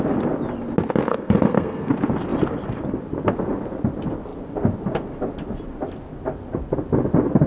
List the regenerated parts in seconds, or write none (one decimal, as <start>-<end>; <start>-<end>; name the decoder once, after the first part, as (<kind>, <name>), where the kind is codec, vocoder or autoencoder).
1.1-1.9 (codec, SNAC)